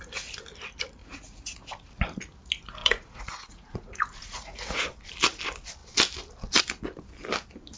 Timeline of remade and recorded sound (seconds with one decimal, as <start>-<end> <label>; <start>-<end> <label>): 0.0-1.0 recorded; 1.0-1.9 remade; 1.9-2.8 recorded; 2.8-4.8 remade; 4.8-7.8 recorded